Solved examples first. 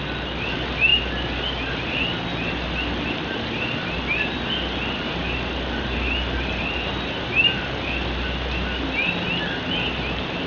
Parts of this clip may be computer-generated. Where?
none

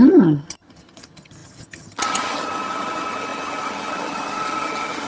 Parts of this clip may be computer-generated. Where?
0.0-5.1 (vocoder, HiFi-GAN)

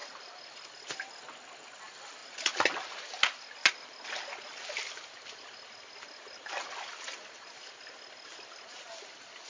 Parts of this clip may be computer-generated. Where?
none

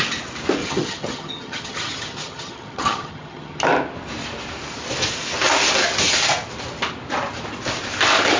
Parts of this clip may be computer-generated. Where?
0.6-3.6 (vocoder, HiFi-GAN)

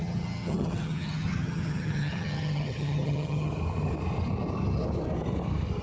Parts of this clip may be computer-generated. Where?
0.0-3.5 (vocoder, HiFi-GAN)